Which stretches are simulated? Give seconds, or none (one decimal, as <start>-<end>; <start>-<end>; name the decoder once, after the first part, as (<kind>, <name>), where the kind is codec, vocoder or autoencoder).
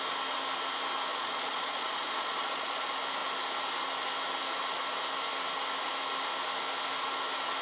1.1-2.8 (vocoder, Vocos)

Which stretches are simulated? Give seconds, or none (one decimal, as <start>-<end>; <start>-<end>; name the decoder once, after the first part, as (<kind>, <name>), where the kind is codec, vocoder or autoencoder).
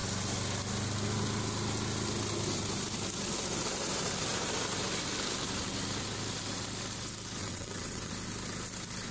7.4-8.1 (vocoder, WaveNeXt)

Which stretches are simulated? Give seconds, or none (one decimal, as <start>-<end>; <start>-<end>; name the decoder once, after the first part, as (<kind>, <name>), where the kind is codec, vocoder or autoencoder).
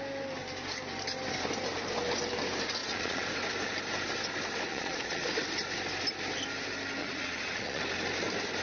2.8-3.3 (vocoder, Vocos); 4.7-5.3; 7.0-7.8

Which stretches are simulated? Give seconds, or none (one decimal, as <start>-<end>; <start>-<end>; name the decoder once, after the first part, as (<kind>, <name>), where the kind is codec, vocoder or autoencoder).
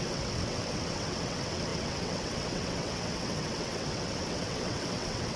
0.0-5.4 (vocoder, WaveNeXt)